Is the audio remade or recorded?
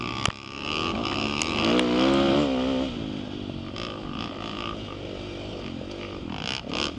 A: recorded